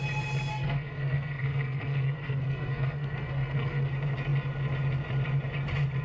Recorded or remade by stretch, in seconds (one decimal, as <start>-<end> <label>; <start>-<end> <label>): 0.0-0.5 recorded; 0.5-3.9 remade; 3.9-6.0 recorded